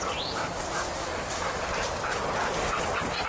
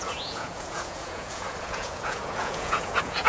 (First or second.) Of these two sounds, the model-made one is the second